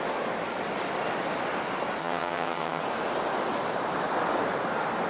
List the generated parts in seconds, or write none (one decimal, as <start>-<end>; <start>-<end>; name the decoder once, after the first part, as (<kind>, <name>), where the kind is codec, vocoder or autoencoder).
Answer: 2.0-2.8 (vocoder, HiFi-GAN)